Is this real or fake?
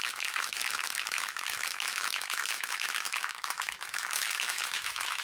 fake